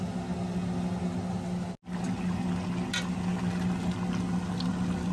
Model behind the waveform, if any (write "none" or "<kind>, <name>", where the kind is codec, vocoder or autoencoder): none